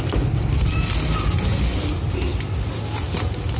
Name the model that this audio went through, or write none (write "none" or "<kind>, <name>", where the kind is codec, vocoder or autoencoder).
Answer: none